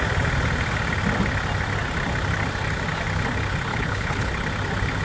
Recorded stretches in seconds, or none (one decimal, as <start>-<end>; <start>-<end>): 0.0-3.7; 4.3-5.0